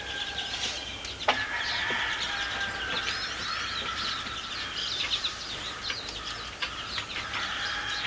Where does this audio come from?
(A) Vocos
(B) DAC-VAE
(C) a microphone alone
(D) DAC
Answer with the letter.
C